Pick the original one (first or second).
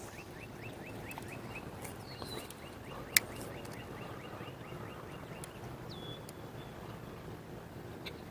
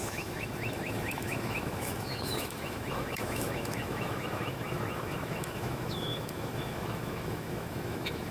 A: first